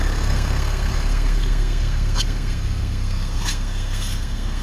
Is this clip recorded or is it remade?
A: remade